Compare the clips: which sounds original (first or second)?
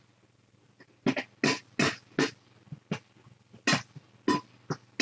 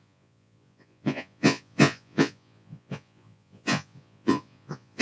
first